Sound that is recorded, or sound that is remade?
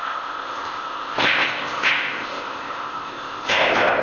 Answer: remade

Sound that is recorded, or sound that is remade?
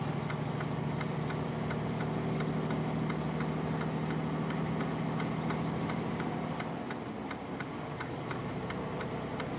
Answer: recorded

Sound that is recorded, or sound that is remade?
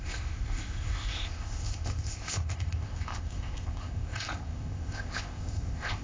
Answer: remade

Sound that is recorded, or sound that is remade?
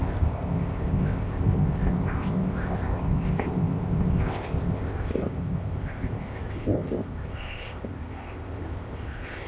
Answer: remade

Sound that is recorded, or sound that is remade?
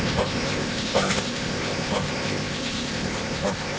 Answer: remade